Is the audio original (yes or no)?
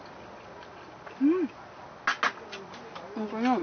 yes